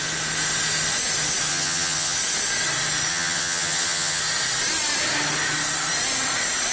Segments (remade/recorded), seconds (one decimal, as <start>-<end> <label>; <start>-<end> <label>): 0.0-1.5 recorded; 1.5-2.2 remade; 2.2-3.1 recorded; 3.1-4.2 remade; 4.2-6.7 recorded